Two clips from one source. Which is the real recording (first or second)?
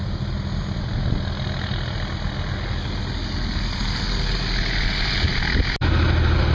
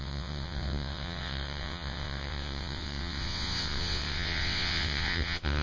first